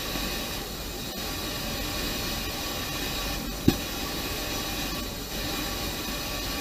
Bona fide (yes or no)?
yes